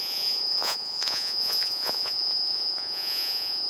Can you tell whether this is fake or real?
fake